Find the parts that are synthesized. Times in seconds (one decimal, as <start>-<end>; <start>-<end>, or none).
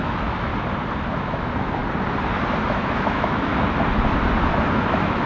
0.0-0.5; 1.1-1.8; 2.7-3.5; 4.7-5.3